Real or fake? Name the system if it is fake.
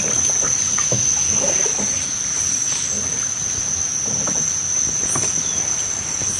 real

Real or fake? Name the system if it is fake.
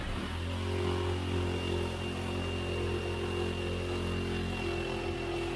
real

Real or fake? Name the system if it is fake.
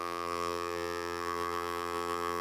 fake, vocoder, BigVGAN v2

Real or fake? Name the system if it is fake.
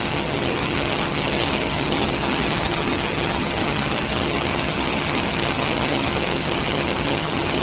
fake, vocoder, HiFi-GAN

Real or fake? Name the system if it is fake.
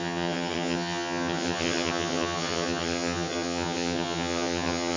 fake, vocoder, HiFi-GAN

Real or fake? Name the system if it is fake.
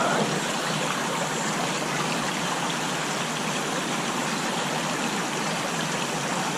real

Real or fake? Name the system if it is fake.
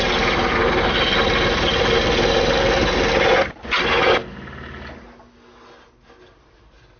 real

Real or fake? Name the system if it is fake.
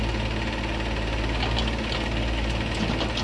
real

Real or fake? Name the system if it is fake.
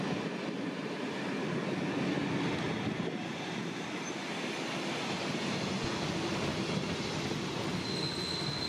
real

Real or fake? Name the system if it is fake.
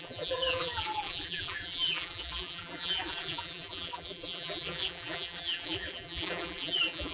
fake, vocoder, BigVGAN v2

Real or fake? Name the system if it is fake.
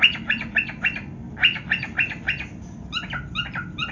real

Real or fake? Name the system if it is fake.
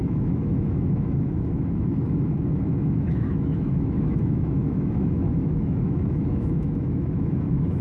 fake, autoencoder, DAC-VAE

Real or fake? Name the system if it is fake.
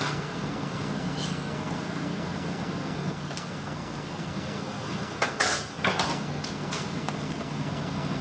fake, codec, SNAC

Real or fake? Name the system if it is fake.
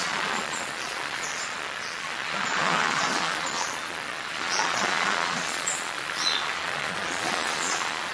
fake, vocoder, Vocos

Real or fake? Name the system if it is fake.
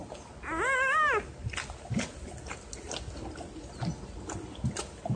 real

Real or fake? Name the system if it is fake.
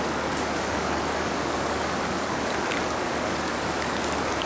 fake, codec, DAC